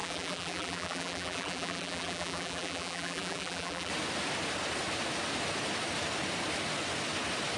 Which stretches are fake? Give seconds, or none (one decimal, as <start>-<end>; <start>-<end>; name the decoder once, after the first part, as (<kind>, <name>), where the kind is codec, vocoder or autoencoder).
0.0-3.9 (vocoder, BigVGAN v2)